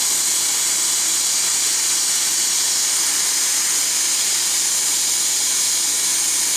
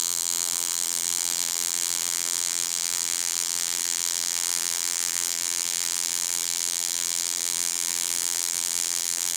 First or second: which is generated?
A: second